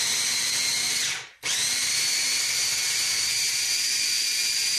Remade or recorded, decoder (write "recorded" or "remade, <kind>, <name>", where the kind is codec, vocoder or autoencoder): recorded